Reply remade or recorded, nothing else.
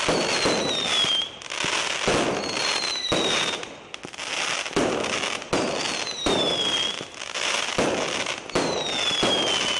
recorded